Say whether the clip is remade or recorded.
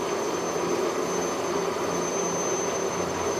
recorded